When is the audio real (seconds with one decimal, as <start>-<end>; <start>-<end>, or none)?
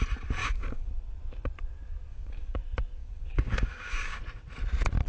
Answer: 0.0-0.4; 0.9-2.1; 2.6-3.0; 4.2-5.1